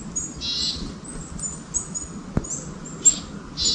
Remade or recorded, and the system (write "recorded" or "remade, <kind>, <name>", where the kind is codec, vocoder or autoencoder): recorded